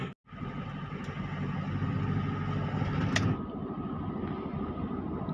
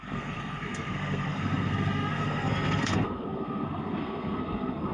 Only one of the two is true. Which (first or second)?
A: first